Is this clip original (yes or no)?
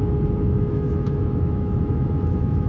no